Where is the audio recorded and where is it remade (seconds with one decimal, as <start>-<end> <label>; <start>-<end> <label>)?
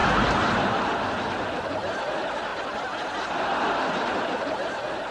0.0-5.1 recorded